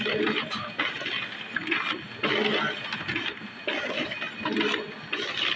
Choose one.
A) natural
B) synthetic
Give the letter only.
A